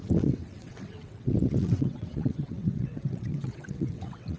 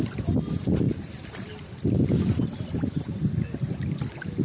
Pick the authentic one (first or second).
second